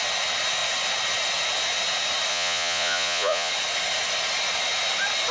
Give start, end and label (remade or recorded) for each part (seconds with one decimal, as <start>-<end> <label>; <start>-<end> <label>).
0.0-2.3 recorded; 2.3-3.5 remade; 3.5-5.3 recorded